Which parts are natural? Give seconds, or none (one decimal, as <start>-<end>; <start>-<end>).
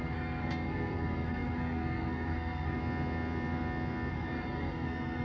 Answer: 2.8-4.1